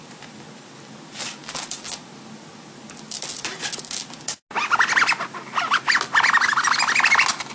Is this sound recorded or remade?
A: recorded